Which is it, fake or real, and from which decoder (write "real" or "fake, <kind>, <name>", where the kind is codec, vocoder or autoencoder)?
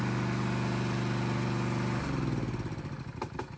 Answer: real